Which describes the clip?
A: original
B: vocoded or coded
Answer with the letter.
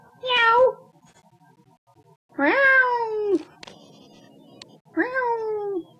A